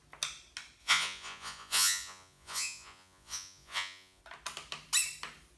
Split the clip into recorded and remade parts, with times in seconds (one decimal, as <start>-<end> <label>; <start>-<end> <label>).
0.0-0.8 recorded; 0.8-4.2 remade; 4.2-5.6 recorded